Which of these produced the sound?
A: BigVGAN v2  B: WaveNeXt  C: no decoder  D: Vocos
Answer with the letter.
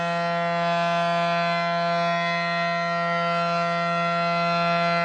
C